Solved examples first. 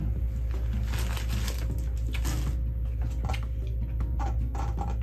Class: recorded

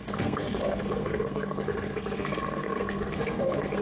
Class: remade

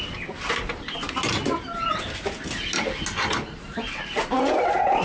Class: recorded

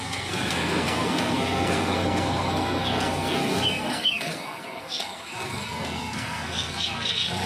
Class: remade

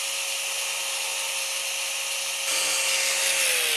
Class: recorded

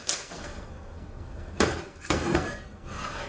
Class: remade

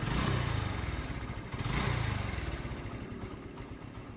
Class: recorded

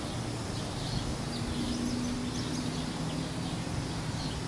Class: recorded